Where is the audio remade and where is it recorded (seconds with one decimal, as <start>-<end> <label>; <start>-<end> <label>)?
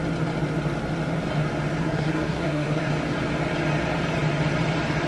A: 0.0-1.8 recorded; 1.8-2.9 remade; 2.9-5.1 recorded